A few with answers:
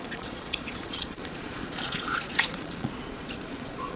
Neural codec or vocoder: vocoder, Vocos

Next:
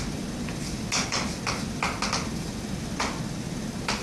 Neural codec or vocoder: none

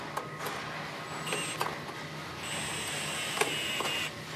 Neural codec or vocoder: none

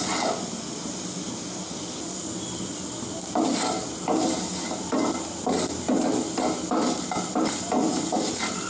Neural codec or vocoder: none